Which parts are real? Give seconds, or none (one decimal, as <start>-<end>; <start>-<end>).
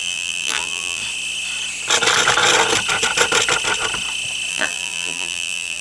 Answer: 1.0-4.5